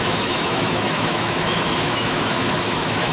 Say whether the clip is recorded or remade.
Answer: remade